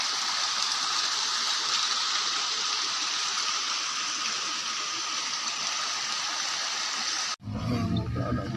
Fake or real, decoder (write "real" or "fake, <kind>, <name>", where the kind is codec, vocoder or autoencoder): real